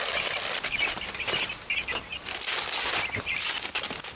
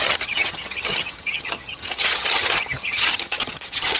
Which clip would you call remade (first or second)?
second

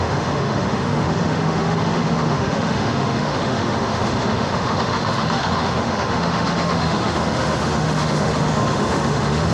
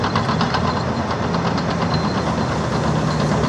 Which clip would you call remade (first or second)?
first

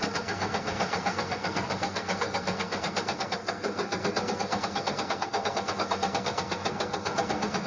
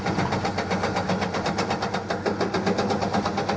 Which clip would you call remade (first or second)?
first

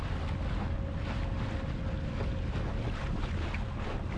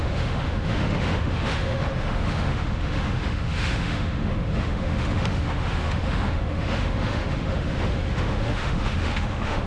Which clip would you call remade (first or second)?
second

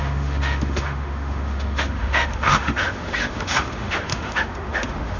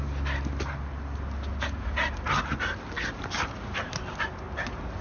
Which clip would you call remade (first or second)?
first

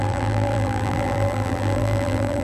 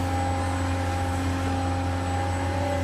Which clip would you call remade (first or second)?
first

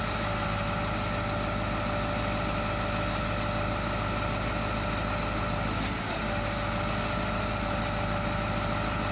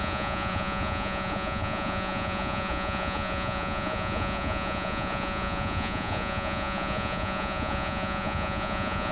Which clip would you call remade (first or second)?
second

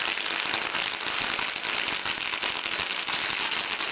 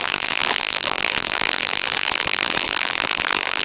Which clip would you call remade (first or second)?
second